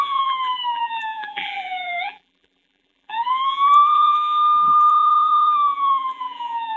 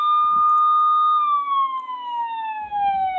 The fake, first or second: first